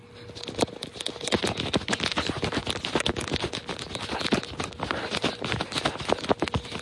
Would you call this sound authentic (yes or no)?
yes